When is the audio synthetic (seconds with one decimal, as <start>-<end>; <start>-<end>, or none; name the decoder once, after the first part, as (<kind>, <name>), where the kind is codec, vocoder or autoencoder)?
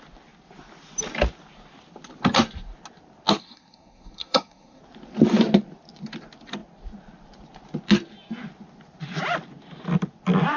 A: 3.4-4.8 (codec, SNAC)